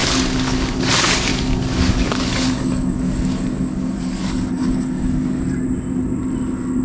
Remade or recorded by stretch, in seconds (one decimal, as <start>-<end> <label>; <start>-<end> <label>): 0.0-0.9 remade; 0.9-1.3 recorded; 1.3-5.4 remade; 5.4-6.8 recorded